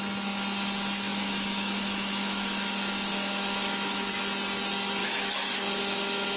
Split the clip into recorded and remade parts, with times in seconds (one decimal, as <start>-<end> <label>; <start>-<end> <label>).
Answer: 0.0-1.1 recorded; 1.1-4.1 remade; 4.1-5.0 recorded; 5.0-6.4 remade